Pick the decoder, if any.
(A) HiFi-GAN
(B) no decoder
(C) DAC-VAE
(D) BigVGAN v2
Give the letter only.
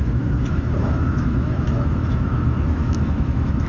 C